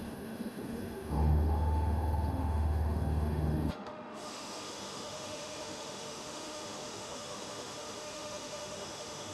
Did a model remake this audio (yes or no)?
yes